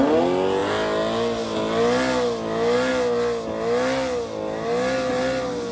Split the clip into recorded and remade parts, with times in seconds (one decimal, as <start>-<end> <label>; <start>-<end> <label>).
0.0-5.7 recorded